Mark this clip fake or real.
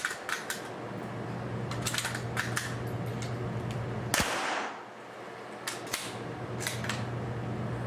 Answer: real